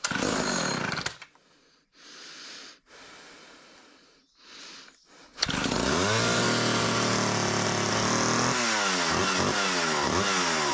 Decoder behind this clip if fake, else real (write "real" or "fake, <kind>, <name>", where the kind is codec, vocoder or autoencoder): real